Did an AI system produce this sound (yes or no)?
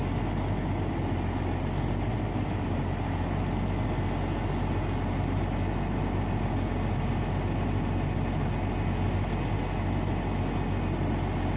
no